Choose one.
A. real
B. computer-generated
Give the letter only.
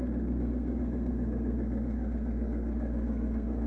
B